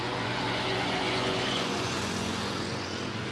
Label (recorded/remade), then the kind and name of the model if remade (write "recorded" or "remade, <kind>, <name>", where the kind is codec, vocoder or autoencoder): remade, vocoder, Vocos